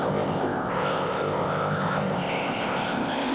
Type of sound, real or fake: fake